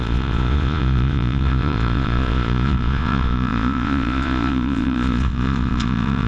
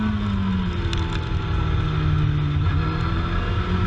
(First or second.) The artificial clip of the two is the first